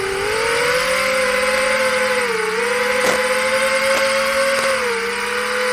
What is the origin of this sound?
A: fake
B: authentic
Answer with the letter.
B